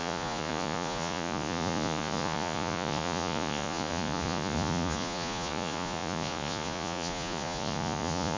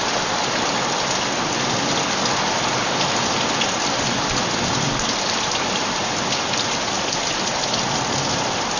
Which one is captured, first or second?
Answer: second